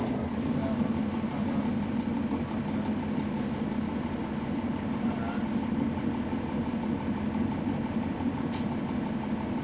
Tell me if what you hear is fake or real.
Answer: real